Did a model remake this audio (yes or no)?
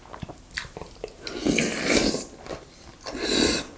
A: no